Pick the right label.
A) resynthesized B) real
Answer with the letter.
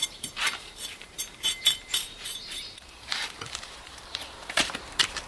A